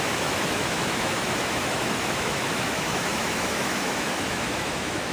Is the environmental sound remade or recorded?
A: remade